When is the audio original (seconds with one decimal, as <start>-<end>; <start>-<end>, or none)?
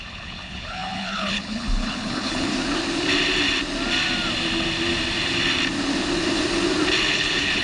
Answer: 2.5-7.1